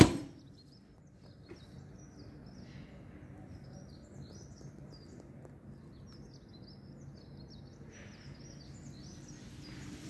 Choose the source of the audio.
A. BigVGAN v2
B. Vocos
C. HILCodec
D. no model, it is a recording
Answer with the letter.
D